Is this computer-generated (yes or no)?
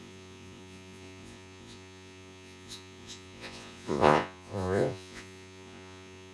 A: yes